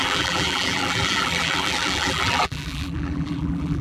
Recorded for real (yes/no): no